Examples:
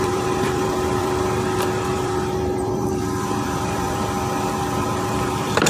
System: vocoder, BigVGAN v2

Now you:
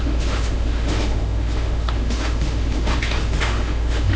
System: autoencoder, DAC-VAE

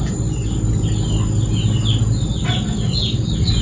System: none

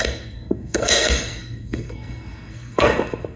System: codec, SNAC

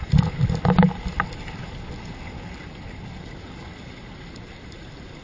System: none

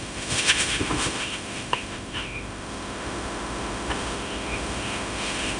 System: autoencoder, DAC-VAE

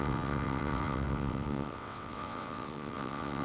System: vocoder, WaveNeXt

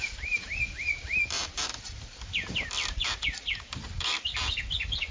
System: vocoder, BigVGAN v2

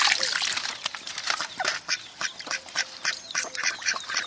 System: none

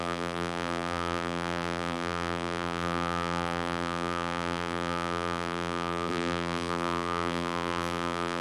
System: vocoder, BigVGAN v2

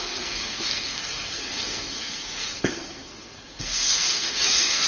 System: codec, SNAC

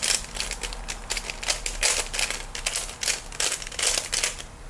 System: none